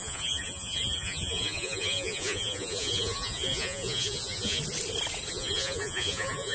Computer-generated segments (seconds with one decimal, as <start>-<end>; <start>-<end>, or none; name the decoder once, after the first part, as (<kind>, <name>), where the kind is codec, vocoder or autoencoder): 0.0-4.6 (vocoder, Vocos); 5.3-6.5